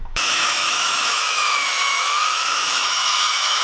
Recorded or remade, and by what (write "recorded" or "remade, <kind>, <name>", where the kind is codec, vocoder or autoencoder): remade, autoencoder, DAC-VAE